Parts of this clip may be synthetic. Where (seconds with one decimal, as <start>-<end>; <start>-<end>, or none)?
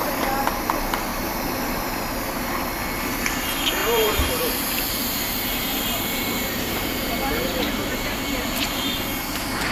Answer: 1.1-1.6; 3.8-9.0